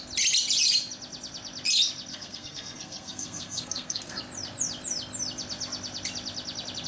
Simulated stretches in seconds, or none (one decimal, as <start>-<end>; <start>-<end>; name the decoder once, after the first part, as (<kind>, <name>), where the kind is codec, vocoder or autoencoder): 2.1-4.2 (codec, SNAC)